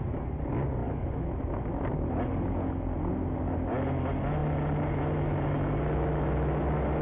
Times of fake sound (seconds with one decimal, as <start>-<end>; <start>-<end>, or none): none